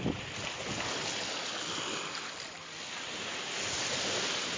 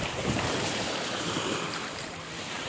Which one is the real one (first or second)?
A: first